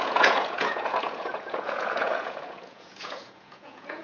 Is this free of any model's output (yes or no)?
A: no